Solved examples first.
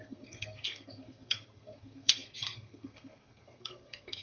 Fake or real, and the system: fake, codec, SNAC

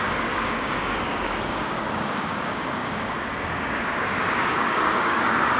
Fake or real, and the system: fake, codec, DAC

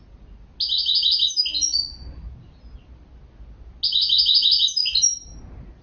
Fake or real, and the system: real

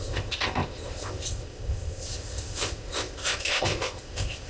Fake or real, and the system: fake, codec, ZipCodec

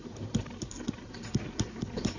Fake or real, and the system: real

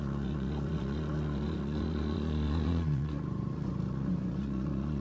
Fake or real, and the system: fake, vocoder, Vocos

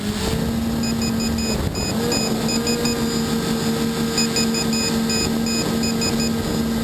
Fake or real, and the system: real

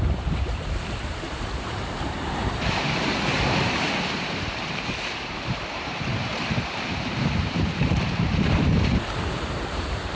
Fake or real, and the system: fake, vocoder, BigVGAN v2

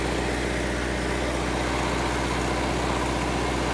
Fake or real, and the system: real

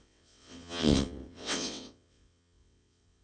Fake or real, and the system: fake, vocoder, WaveNeXt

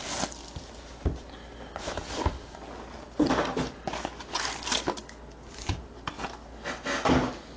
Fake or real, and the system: real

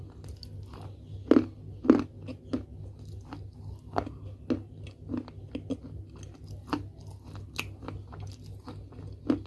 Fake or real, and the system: real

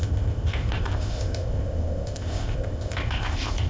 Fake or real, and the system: fake, codec, ZipCodec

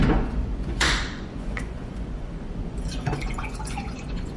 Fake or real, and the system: fake, vocoder, Vocos